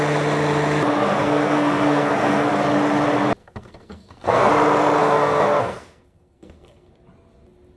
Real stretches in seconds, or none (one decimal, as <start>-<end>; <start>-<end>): 0.0-1.1; 2.5-3.4; 4.5-5.0; 6.9-7.8